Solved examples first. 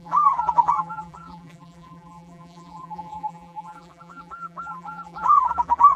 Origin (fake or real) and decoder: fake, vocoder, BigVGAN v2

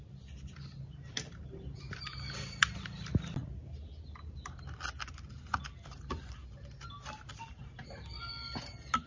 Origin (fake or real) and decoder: real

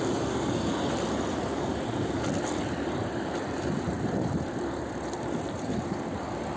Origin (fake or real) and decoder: fake, vocoder, BigVGAN v2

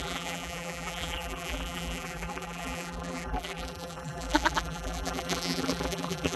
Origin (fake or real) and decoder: fake, vocoder, BigVGAN v2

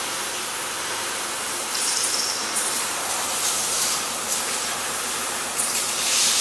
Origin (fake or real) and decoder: fake, vocoder, BigVGAN v2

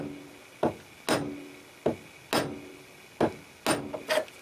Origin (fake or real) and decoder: real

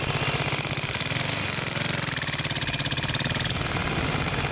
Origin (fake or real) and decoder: fake, vocoder, BigVGAN v2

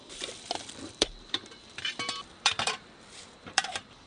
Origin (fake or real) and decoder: fake, vocoder, BigVGAN v2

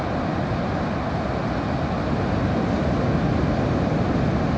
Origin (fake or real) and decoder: real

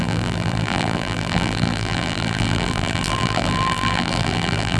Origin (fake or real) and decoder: fake, vocoder, BigVGAN v2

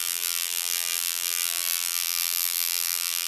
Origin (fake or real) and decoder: fake, vocoder, BigVGAN v2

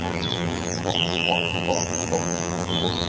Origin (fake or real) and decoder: fake, vocoder, BigVGAN v2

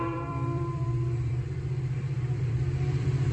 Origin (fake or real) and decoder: fake, vocoder, BigVGAN v2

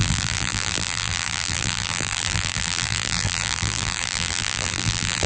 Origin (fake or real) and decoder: fake, vocoder, BigVGAN v2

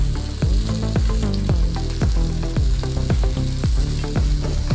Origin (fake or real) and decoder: real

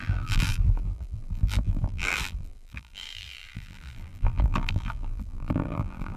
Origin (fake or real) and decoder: fake, vocoder, BigVGAN v2